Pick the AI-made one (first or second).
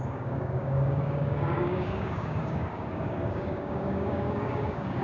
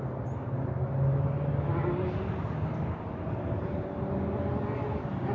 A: first